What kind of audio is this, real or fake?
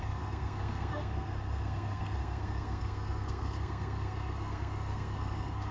fake